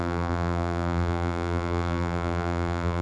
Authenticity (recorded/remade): remade